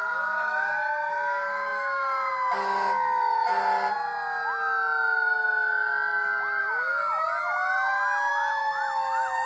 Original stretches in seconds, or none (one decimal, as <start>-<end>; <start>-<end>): 3.5-6.6; 7.0-8.3